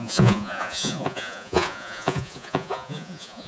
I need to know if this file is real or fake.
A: fake